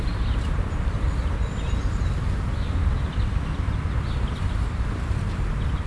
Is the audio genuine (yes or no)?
yes